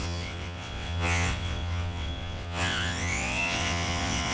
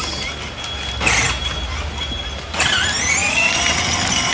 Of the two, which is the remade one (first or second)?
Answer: first